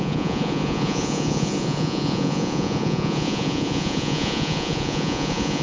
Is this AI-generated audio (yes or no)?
yes